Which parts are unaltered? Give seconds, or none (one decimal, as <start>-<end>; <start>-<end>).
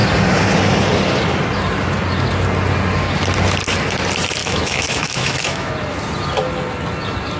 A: 0.0-4.4; 5.7-7.4